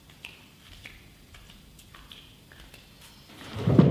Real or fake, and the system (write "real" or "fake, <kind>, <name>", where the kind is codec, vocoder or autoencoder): real